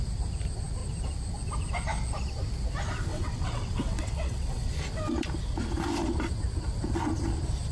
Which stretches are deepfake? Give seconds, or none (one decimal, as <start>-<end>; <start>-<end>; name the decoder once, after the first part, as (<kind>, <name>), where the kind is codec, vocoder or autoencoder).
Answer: 3.1-4.7 (vocoder, WaveNeXt)